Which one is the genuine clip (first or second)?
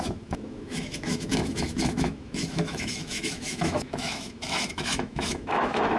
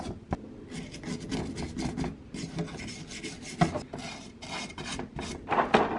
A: second